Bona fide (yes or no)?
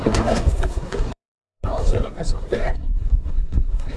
no